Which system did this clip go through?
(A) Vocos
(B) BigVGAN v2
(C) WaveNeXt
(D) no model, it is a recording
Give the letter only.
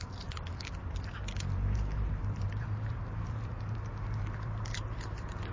B